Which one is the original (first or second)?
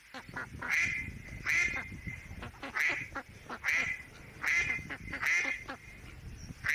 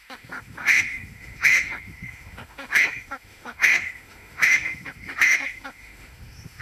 first